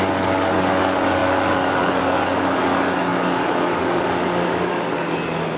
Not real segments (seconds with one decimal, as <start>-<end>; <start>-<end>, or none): 0.0-5.6